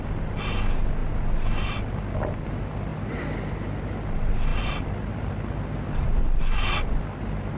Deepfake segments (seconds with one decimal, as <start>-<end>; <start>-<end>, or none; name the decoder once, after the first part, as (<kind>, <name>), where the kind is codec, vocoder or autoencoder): 2.9-3.6 (vocoder, BigVGAN v2); 4.5-6.4